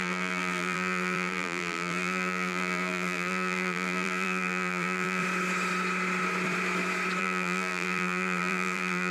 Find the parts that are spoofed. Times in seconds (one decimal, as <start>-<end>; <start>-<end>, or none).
0.0-5.2; 7.2-9.1